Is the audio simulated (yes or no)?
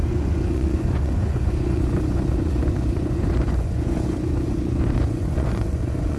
yes